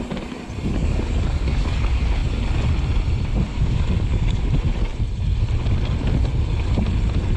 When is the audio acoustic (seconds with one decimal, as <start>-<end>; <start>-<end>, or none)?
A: 0.0-0.7; 1.8-3.5; 4.5-7.4

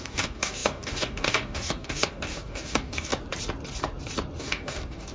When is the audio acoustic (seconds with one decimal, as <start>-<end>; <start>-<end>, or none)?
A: 3.1-4.4

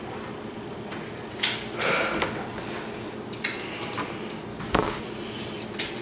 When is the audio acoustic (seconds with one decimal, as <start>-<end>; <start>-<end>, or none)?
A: 0.0-4.5; 5.0-6.0

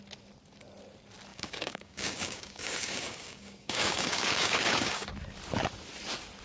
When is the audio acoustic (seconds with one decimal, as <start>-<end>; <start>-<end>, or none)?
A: 0.0-1.3; 5.1-6.4

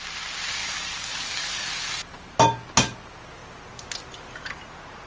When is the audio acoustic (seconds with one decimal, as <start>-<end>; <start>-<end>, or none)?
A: 0.0-0.6; 1.7-5.1

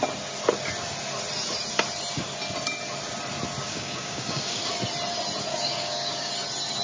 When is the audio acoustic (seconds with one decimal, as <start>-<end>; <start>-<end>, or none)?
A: 0.0-3.6; 4.7-5.5; 6.3-6.8

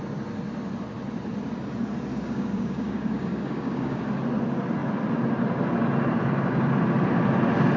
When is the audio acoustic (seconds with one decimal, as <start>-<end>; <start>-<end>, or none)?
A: 0.0-2.1; 4.0-7.8

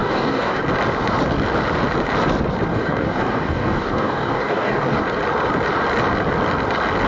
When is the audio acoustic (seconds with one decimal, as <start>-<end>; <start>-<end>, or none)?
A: 0.6-2.7; 5.0-7.1